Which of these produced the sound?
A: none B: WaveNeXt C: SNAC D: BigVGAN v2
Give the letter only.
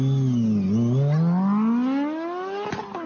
A